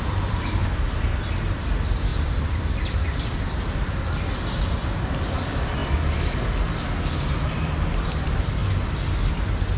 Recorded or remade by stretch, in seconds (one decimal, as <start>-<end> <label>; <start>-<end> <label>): 0.0-0.6 remade; 0.6-1.3 recorded; 1.3-5.8 remade; 5.8-7.9 recorded; 7.9-8.6 remade; 8.6-9.3 recorded; 9.3-9.8 remade